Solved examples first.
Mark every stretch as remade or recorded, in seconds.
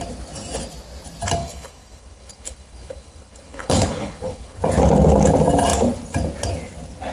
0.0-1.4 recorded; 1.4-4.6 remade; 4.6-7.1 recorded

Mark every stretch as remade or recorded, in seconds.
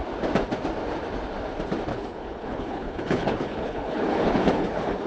0.0-1.9 recorded; 1.9-5.1 remade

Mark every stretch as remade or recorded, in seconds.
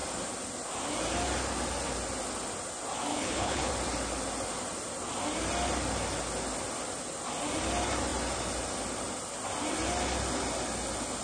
0.0-3.1 recorded; 3.1-3.7 remade; 3.7-11.2 recorded